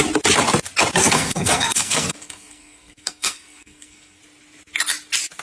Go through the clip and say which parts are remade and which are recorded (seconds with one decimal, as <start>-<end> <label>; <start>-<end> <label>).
0.0-1.0 recorded; 1.0-4.2 remade; 4.2-5.4 recorded